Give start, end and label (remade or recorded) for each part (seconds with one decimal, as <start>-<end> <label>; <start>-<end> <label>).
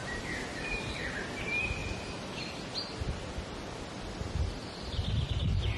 0.0-1.8 remade; 1.8-5.3 recorded; 5.3-5.8 remade